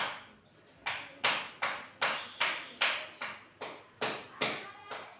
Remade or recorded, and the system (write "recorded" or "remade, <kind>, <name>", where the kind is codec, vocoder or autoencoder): recorded